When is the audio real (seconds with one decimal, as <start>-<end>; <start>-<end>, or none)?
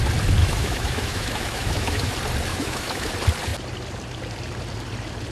0.0-0.4; 2.1-2.5; 3.1-5.3